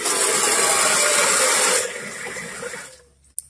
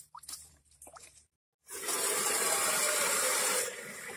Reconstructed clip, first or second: second